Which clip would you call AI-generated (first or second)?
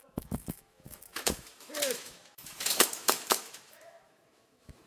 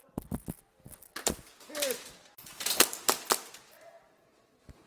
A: first